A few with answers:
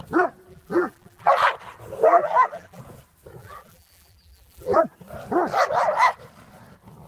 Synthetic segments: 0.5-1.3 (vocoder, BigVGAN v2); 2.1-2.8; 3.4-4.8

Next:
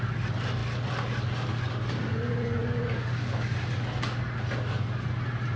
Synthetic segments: none

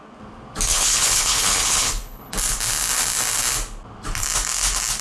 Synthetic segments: 0.7-2.3 (codec, HILCodec)

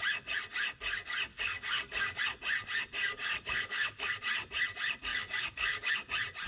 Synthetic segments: 1.3-2.2 (codec, DAC); 3.0-4.1; 5.1-5.9